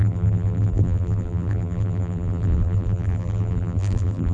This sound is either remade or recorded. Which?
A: remade